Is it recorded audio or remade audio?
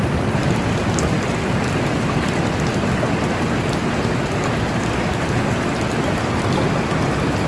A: recorded